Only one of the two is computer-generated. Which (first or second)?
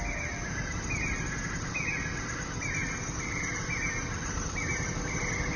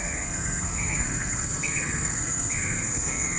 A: second